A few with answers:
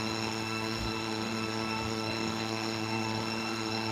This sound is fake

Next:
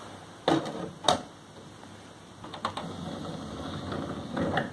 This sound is real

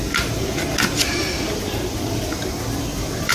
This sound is real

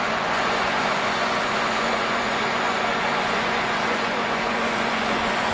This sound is fake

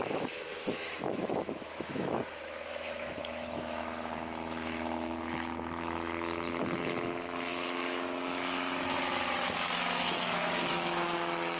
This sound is fake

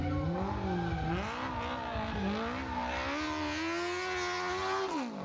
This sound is real